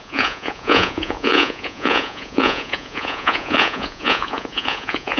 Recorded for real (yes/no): no